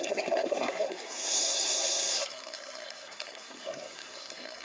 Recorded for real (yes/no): no